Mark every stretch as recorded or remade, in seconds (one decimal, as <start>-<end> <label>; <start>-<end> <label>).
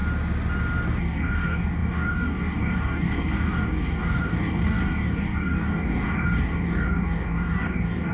0.0-1.0 recorded; 1.0-8.1 remade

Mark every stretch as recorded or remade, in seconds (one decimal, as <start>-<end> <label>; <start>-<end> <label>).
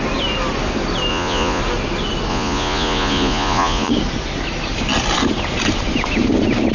0.0-1.1 recorded; 1.1-1.6 remade; 1.6-2.3 recorded; 2.3-3.9 remade; 3.9-6.7 recorded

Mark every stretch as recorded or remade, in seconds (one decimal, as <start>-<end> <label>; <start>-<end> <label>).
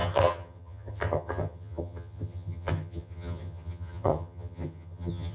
0.0-5.3 remade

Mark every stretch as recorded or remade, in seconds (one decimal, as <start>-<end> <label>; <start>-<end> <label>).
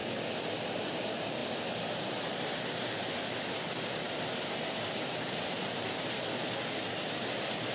0.0-7.7 recorded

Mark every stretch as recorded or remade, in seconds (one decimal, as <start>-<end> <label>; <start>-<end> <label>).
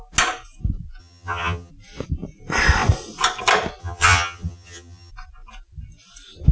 0.0-1.0 recorded; 1.0-1.7 remade; 1.7-3.8 recorded; 3.8-5.1 remade; 5.1-6.5 recorded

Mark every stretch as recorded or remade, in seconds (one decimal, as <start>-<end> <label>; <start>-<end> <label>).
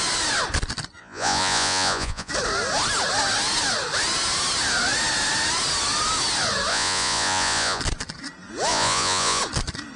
0.0-1.0 recorded; 1.0-2.3 remade; 2.3-6.7 recorded; 6.7-7.8 remade; 7.8-8.7 recorded; 8.7-9.4 remade; 9.4-10.0 recorded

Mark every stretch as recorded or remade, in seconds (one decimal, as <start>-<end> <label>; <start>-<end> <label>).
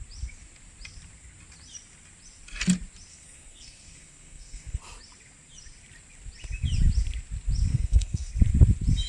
0.0-3.1 recorded; 3.1-4.8 remade; 4.8-7.7 recorded; 7.7-8.3 remade; 8.3-9.1 recorded